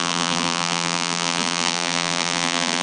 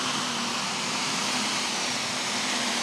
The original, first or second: second